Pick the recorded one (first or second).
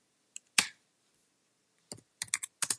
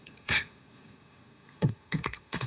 first